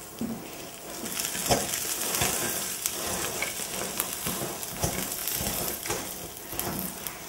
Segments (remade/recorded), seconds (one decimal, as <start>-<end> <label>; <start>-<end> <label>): 0.0-1.4 recorded; 1.4-4.5 remade; 4.5-5.2 recorded; 5.2-5.9 remade; 5.9-7.3 recorded